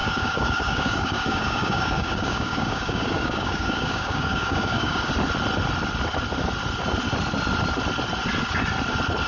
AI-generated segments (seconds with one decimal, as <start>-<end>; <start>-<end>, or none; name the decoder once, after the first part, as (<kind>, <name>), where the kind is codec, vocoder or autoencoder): 0.0-5.1 (codec, DAC)